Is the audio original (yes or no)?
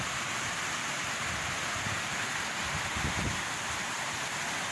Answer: yes